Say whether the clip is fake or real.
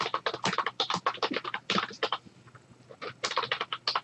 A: real